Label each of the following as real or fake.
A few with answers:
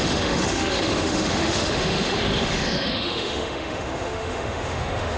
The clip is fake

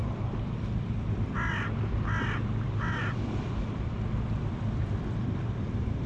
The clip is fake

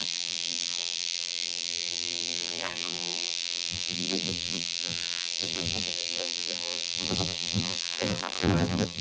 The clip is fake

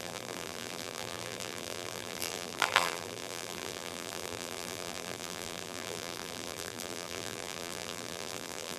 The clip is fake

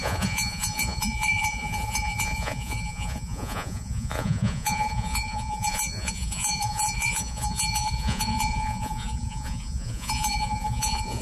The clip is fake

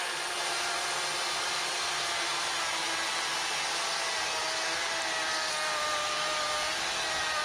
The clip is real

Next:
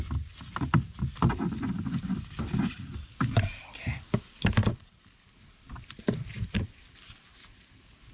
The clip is real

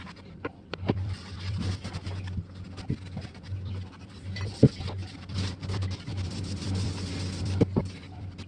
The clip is fake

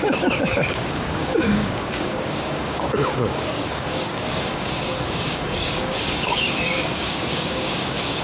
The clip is fake